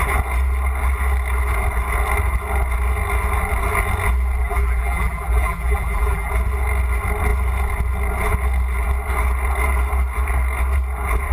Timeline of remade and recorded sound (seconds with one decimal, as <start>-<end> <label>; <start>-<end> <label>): 0.0-4.4 recorded; 4.4-6.3 remade; 6.3-11.3 recorded